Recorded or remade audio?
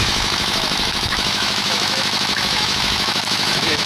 remade